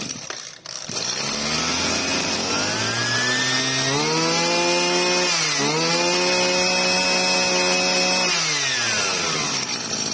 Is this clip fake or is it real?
real